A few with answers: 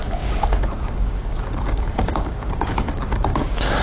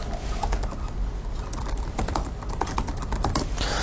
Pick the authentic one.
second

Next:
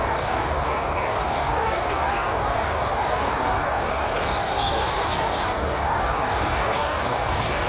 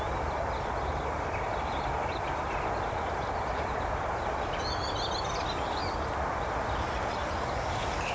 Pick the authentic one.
second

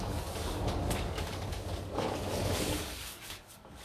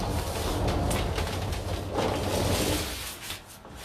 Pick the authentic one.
second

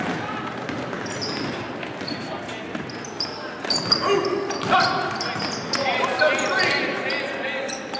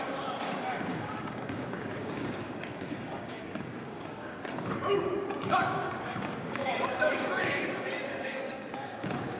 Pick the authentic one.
first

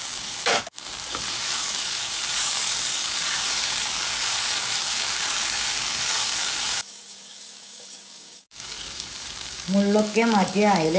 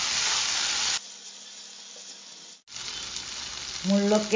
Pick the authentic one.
second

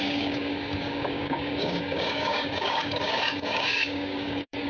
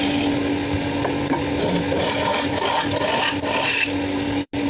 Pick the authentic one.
second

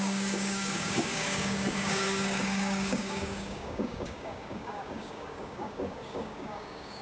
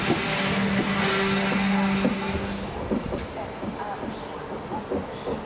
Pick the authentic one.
second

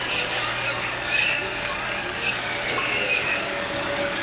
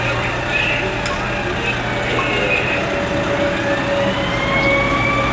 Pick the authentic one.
second